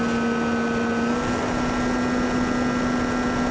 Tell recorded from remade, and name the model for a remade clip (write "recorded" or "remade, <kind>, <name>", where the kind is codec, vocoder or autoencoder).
recorded